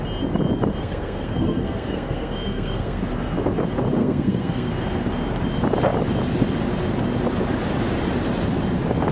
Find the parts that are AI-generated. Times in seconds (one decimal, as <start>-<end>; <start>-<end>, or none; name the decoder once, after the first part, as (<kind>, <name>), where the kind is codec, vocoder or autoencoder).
0.8-3.0 (codec, SNAC); 4.0-4.7